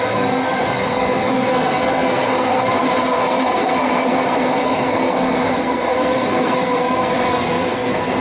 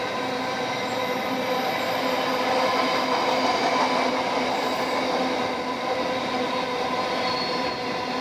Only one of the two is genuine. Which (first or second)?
second